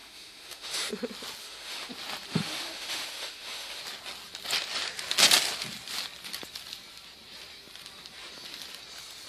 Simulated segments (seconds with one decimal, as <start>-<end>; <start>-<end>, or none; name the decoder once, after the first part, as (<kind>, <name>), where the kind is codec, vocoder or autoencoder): 0.0-0.9 (autoencoder, DAC-VAE); 1.4-1.9; 2.3-3.8